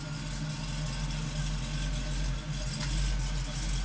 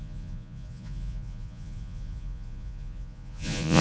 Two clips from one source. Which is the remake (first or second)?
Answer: second